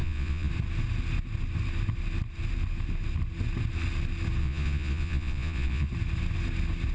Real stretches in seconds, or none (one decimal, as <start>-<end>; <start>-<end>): 0.5-4.4; 5.9-6.9